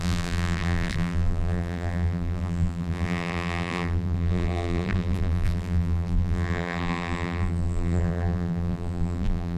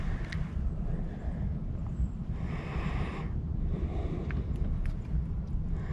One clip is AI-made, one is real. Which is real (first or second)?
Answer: second